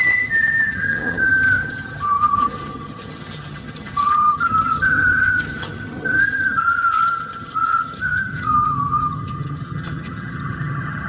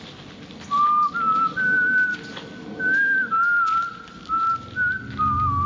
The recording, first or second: second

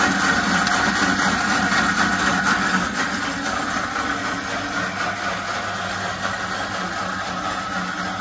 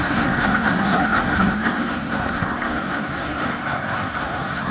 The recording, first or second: first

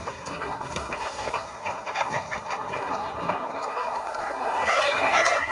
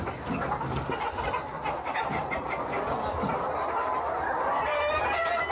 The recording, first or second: second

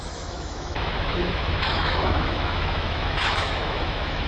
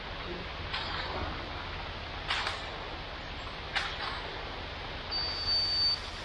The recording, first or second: second